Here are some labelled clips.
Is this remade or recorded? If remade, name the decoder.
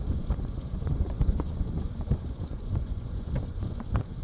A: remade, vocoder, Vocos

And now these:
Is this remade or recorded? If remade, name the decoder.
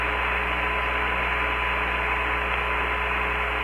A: recorded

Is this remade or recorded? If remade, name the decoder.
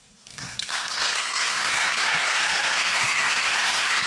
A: remade, codec, SNAC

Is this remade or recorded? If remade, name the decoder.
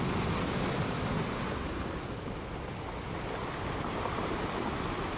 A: recorded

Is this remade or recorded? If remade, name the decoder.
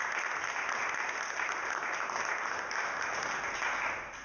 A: recorded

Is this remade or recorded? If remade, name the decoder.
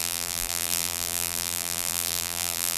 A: remade, vocoder, BigVGAN v2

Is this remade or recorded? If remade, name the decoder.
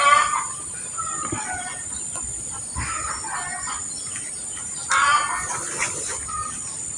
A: recorded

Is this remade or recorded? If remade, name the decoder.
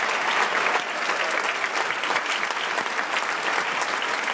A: recorded